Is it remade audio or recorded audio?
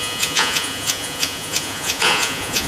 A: remade